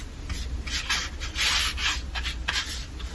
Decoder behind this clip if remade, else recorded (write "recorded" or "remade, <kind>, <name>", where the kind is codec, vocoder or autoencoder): recorded